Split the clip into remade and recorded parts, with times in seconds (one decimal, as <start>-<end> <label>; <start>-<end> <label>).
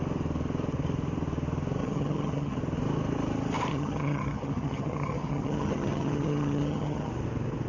0.0-1.8 recorded; 1.8-2.6 remade; 2.6-3.7 recorded; 3.7-7.1 remade; 7.1-7.7 recorded